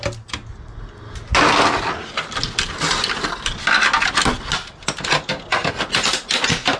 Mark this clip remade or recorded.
recorded